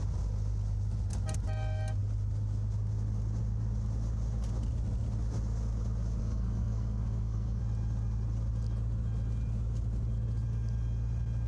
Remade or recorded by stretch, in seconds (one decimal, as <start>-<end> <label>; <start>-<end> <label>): 0.0-6.2 recorded; 6.2-7.6 remade; 7.6-11.5 recorded

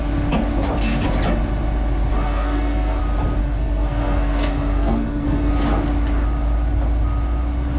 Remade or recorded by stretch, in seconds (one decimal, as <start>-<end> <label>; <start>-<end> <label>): 0.0-2.1 recorded; 2.1-3.0 remade; 3.0-3.4 recorded; 3.4-5.5 remade; 5.5-7.8 recorded

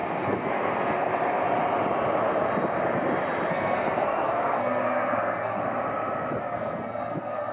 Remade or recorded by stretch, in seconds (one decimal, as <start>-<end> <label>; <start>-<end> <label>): 0.0-1.1 remade; 1.1-3.5 recorded; 3.5-5.6 remade; 5.6-6.4 recorded; 6.4-7.5 remade

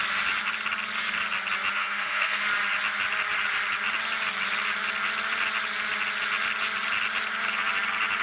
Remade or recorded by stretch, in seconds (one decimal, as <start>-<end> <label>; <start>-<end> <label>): 0.0-1.8 recorded; 1.8-2.4 remade; 2.4-8.2 recorded

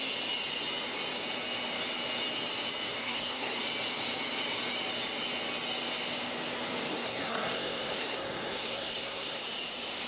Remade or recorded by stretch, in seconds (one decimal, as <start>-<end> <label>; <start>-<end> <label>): 0.0-3.0 recorded; 3.0-3.6 remade; 3.6-6.9 recorded; 6.9-9.4 remade; 9.4-10.1 recorded